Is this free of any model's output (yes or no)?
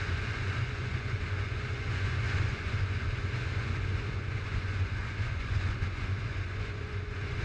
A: no